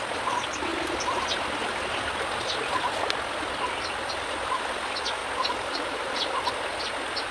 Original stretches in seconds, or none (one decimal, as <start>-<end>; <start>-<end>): 0.0-5.2; 6.8-7.3